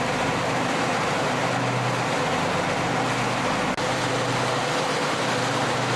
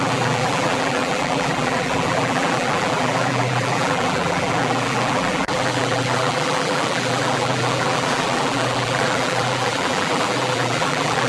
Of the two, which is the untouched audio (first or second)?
first